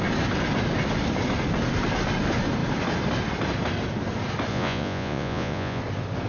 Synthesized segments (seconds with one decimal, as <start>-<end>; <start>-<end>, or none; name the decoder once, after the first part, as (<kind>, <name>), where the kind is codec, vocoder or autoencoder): 4.5-5.8 (vocoder, Vocos)